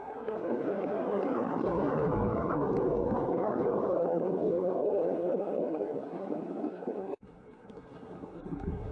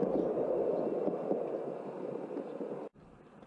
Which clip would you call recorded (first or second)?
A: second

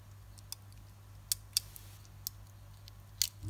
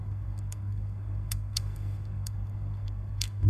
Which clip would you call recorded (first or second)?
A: first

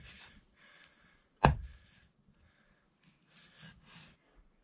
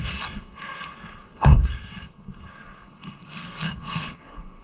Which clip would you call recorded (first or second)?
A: first